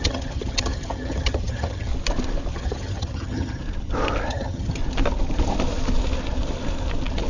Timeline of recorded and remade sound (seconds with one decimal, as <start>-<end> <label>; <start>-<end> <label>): 0.0-1.9 remade; 1.9-2.5 recorded; 2.5-3.6 remade; 3.6-4.3 recorded; 4.3-4.8 remade; 4.8-7.3 recorded